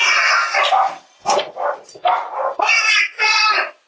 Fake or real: real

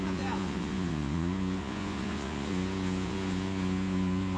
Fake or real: fake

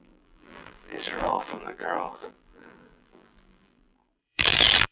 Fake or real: fake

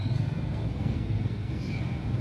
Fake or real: fake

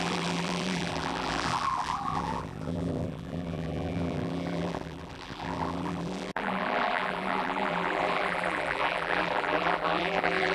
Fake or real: fake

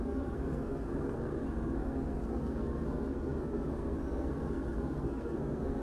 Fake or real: fake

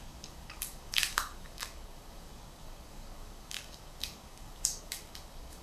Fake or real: fake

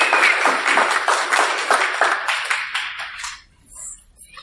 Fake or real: real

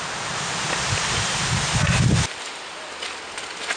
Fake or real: real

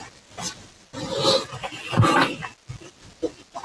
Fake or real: real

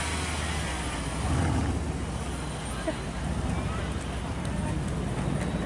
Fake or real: real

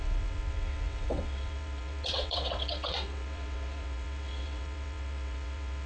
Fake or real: fake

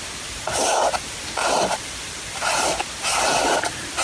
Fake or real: fake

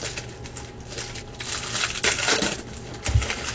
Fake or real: real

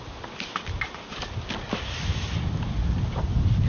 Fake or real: real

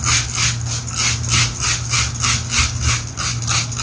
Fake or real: real